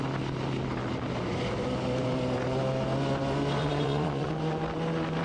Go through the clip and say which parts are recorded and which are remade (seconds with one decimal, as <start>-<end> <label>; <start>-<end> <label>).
0.0-3.6 recorded; 3.6-4.3 remade; 4.3-5.2 recorded